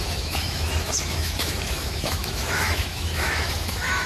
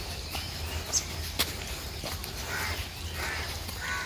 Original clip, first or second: second